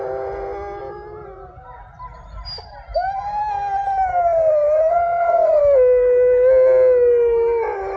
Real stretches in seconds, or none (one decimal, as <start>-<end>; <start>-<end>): 0.0-4.9; 5.6-8.0